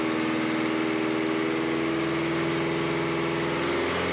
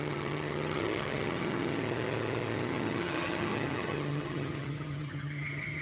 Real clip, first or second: first